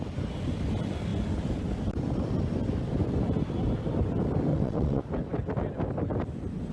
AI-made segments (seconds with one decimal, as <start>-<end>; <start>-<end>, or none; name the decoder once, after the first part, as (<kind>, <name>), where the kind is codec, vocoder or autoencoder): 4.5-5.0 (vocoder, WaveNeXt)